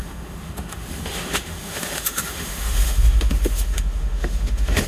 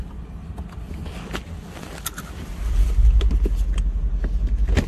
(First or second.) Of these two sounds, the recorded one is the second